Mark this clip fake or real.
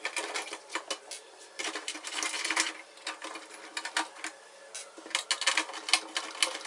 real